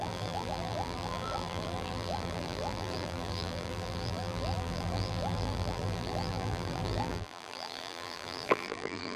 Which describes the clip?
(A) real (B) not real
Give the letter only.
B